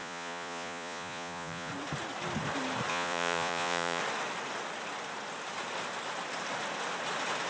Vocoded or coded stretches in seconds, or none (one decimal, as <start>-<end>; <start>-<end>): 0.0-1.7; 2.9-4.0